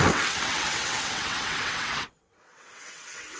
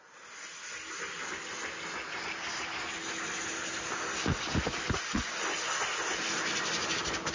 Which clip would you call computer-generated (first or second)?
first